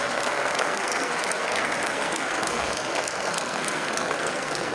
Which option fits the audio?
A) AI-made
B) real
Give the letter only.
A